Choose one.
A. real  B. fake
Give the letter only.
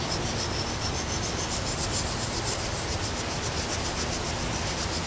A